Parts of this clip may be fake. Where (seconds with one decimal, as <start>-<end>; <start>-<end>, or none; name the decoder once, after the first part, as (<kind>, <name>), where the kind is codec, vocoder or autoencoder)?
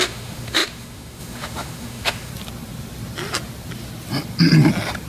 0.0-2.3 (autoencoder, DAC-VAE)